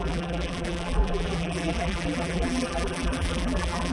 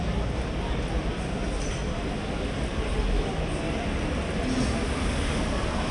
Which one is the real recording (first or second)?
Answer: second